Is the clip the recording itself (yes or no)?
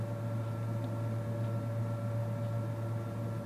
yes